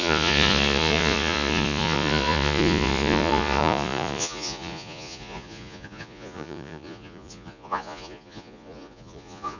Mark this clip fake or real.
fake